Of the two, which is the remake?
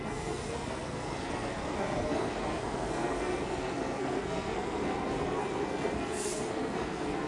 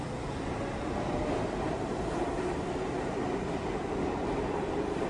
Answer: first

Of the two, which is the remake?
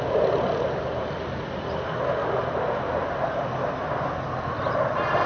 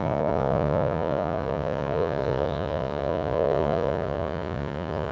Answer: second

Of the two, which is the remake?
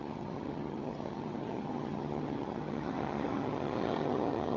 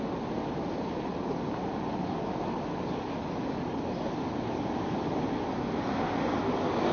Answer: first